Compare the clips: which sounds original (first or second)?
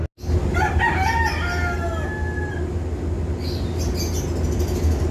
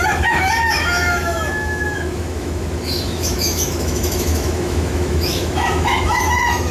first